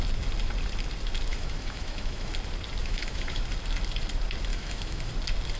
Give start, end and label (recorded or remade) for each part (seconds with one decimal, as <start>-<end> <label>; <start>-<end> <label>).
0.0-1.3 recorded; 1.3-2.3 remade; 2.3-2.8 recorded; 2.8-3.4 remade; 3.4-4.5 recorded; 4.5-5.1 remade; 5.1-5.6 recorded